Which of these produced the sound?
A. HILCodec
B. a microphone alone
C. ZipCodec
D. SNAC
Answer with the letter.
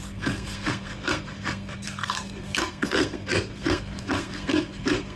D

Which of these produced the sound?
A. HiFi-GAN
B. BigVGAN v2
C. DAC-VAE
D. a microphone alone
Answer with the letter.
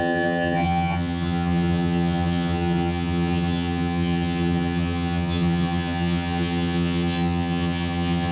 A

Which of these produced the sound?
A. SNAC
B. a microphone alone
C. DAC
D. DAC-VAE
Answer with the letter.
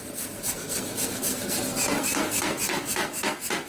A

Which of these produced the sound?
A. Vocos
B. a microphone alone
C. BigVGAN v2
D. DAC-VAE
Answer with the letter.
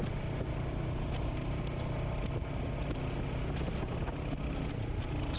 B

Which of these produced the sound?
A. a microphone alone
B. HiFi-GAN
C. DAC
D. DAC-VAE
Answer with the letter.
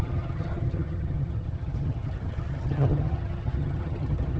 B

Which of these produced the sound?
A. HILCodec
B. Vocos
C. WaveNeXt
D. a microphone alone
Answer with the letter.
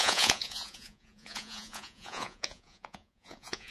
B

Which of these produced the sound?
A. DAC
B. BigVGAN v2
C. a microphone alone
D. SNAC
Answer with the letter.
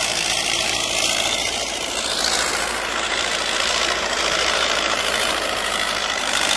B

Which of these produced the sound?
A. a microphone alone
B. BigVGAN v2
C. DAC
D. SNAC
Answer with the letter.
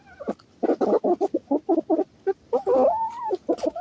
A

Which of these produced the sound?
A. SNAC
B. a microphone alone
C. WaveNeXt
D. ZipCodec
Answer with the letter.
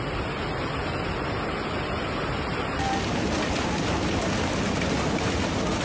B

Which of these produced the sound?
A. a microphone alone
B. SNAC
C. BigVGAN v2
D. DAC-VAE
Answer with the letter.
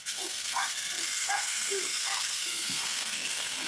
B